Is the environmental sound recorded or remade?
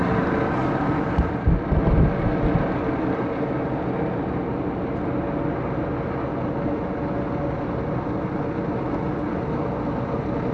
recorded